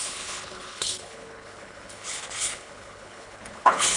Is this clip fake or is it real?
fake